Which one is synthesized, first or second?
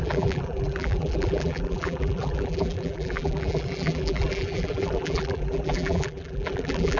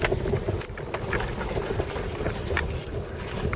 first